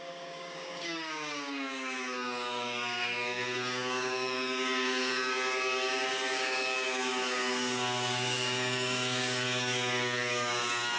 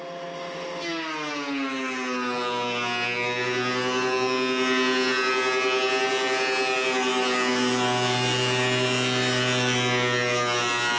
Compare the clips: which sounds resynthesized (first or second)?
first